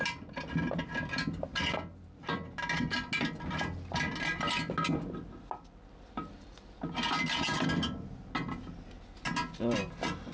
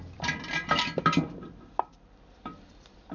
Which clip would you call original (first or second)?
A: first